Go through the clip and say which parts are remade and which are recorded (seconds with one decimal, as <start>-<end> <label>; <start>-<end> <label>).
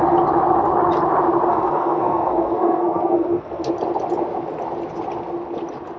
0.0-1.5 recorded; 1.5-3.7 remade; 3.7-6.0 recorded